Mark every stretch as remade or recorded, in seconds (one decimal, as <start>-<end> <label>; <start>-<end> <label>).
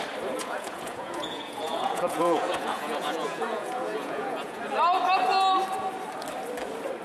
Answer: 0.0-0.4 recorded; 0.4-4.6 remade; 4.6-7.0 recorded